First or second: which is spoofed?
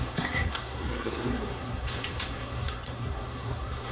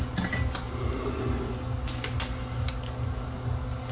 first